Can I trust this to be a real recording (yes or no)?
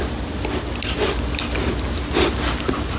yes